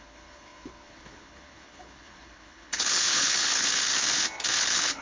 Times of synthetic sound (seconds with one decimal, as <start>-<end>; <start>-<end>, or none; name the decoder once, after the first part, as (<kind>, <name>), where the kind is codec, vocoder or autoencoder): 0.0-4.0 (codec, HILCodec); 4.6-5.0